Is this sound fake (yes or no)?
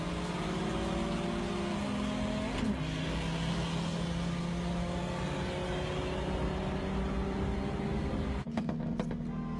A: no